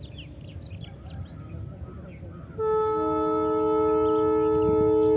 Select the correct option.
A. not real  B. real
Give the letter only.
B